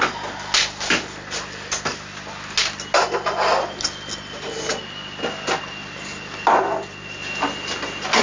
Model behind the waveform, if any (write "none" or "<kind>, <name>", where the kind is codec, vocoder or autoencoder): none